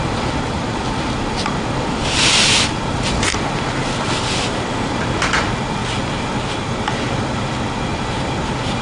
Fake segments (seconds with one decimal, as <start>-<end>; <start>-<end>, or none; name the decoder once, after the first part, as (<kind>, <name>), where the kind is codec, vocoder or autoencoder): 0.0-3.3 (vocoder, BigVGAN v2); 4.1-5.8; 8.2-8.8